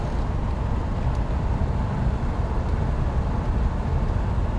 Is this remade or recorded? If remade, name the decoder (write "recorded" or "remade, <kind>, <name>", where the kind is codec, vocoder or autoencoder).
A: recorded